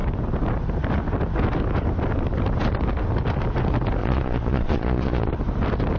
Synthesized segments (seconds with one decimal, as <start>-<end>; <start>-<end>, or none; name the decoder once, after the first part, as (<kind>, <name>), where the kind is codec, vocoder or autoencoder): 4.0-5.3 (vocoder, Vocos)